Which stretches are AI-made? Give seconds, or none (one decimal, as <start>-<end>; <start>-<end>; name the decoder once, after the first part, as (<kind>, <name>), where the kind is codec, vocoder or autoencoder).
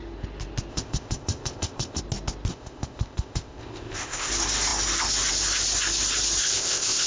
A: 0.7-2.0 (codec, ZipCodec); 2.5-4.3; 6.4-7.1